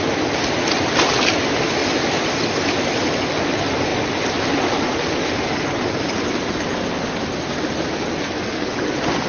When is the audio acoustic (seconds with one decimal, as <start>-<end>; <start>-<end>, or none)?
0.0-8.2; 8.7-9.3